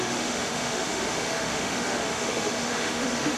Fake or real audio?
fake